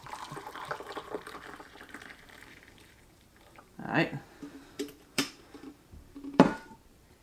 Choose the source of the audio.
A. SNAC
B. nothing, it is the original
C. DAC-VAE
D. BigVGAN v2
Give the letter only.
D